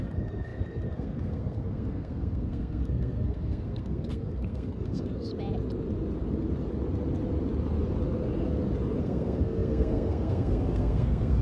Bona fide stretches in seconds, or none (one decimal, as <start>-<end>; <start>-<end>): 5.3-9.0